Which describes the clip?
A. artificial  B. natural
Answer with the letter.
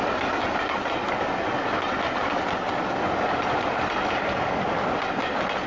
B